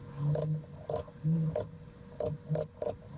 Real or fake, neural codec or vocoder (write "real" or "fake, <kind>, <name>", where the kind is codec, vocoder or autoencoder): real